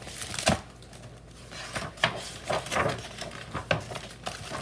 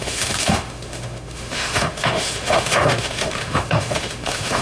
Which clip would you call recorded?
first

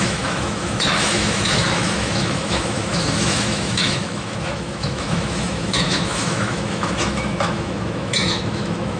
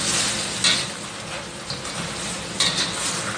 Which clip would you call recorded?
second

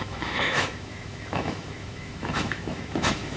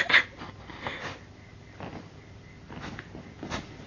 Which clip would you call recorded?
second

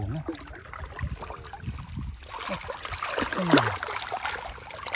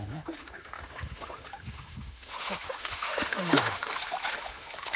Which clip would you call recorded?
first